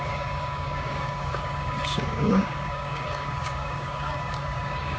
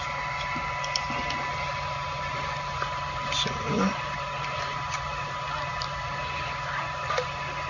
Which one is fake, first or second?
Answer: first